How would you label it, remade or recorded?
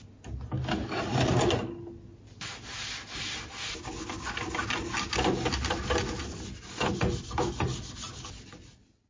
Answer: recorded